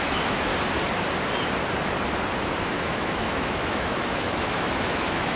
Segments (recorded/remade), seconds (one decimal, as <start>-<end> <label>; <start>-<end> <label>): 0.0-0.5 remade; 0.5-2.6 recorded; 2.6-5.4 remade